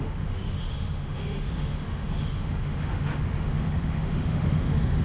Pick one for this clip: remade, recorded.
remade